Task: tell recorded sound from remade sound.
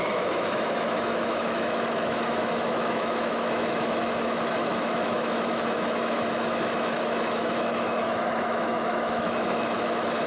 remade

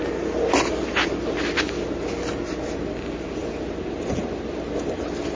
recorded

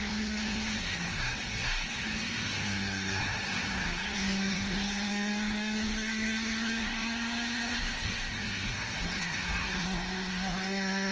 remade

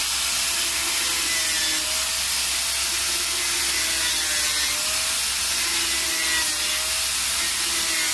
recorded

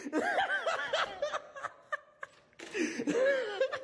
recorded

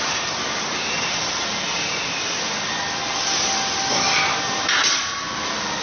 recorded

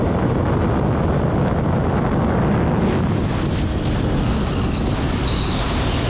recorded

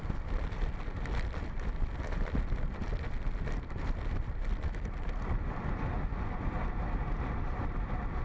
remade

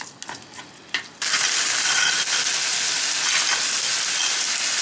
recorded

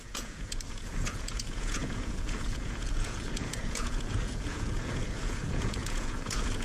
remade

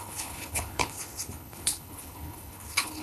remade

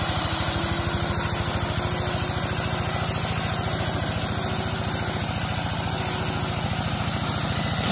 recorded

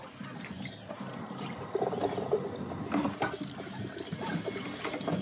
recorded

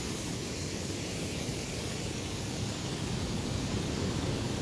remade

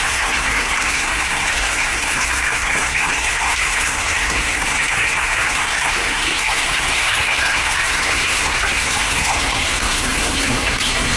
remade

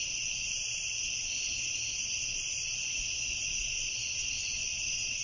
recorded